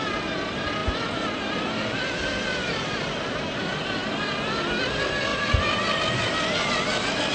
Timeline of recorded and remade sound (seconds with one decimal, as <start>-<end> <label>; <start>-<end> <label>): 0.0-0.8 recorded; 0.8-3.3 remade; 3.3-7.3 recorded